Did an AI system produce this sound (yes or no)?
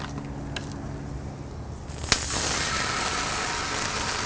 no